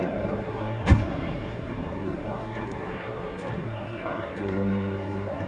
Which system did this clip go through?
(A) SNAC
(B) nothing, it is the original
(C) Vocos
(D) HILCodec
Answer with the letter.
A